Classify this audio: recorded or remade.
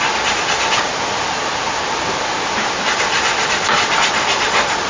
recorded